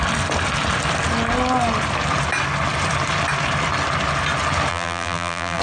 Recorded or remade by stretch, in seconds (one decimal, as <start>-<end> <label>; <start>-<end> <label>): 0.0-4.7 recorded; 4.7-5.6 remade